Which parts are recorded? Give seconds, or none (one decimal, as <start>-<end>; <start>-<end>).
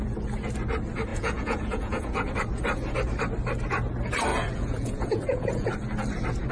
0.0-1.1; 2.3-4.3; 5.7-6.5